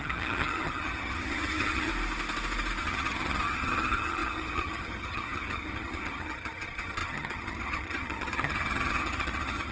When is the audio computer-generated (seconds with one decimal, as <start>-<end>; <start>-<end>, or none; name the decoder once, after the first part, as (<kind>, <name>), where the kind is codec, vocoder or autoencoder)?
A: 0.0-1.9 (vocoder, HiFi-GAN); 2.8-9.7